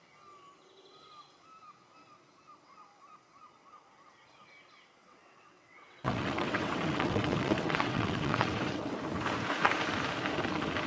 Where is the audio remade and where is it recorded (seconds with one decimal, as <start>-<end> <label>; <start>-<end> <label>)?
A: 0.0-5.0 recorded; 5.0-8.9 remade; 8.9-10.9 recorded